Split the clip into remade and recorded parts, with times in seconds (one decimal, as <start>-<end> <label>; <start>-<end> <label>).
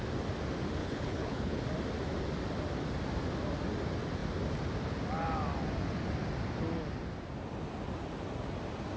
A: 0.0-0.8 recorded; 0.8-1.6 remade; 1.6-9.0 recorded